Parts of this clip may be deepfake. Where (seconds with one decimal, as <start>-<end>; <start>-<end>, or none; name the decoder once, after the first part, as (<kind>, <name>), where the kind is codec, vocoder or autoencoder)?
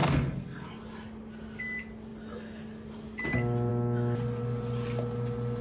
0.0-0.7 (codec, SNAC)